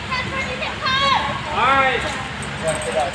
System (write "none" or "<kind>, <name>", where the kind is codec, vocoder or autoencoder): none